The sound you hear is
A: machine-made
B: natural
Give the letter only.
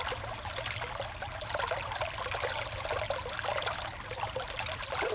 B